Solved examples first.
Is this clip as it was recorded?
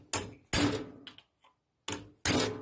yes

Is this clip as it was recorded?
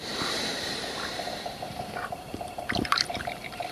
no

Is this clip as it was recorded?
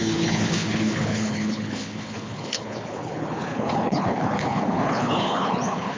no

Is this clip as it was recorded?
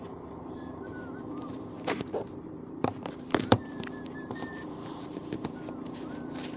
no